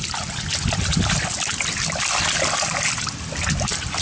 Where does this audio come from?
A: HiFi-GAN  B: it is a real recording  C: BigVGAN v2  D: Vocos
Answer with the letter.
B